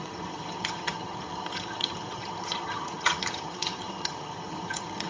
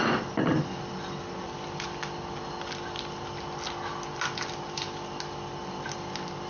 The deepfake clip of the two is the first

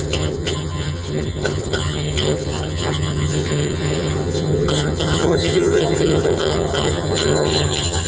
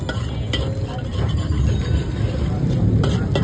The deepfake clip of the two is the first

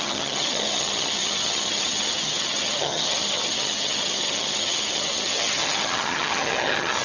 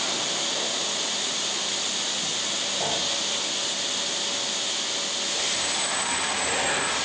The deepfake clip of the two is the first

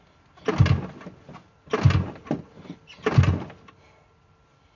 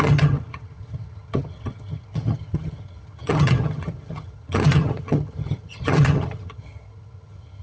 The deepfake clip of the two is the second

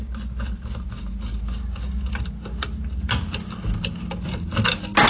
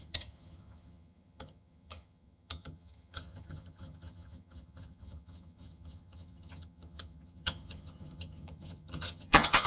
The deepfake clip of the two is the second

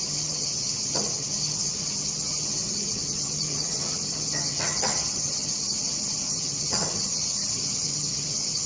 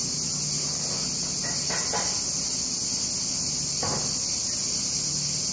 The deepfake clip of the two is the first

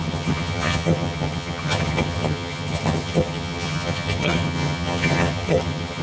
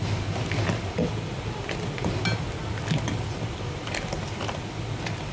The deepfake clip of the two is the first